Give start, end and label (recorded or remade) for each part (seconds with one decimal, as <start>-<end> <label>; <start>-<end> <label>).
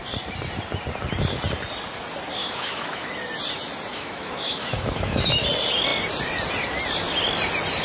0.0-2.4 recorded; 2.4-3.2 remade; 3.2-3.9 recorded; 3.9-5.4 remade; 5.4-7.8 recorded